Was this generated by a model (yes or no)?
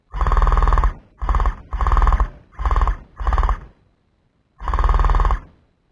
no